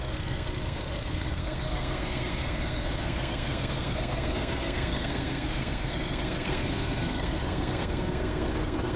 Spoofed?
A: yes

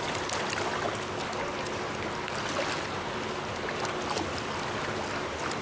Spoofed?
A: no